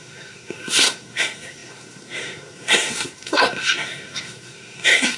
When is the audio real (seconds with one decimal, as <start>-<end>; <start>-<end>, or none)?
none